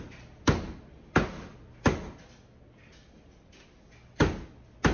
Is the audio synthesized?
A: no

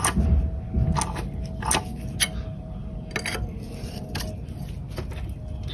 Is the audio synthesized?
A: no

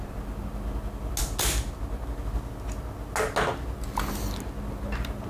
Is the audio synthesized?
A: no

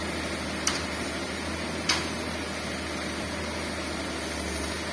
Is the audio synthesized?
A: no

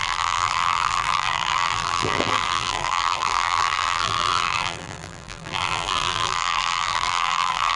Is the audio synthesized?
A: yes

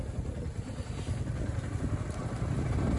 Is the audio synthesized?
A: no